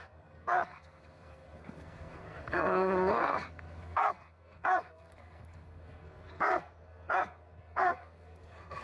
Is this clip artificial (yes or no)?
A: yes